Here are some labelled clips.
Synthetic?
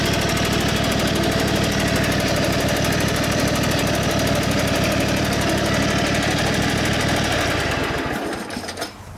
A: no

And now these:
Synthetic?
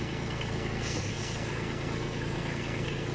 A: yes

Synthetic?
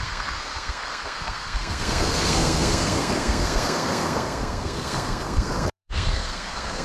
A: yes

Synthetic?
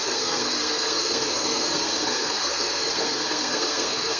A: yes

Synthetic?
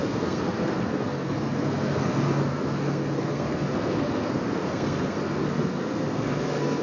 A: yes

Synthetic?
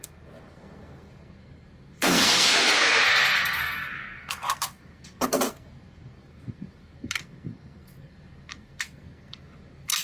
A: yes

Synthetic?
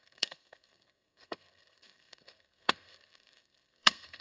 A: yes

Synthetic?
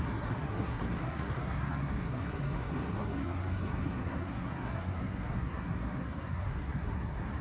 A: yes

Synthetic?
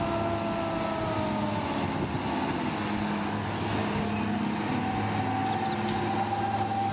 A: no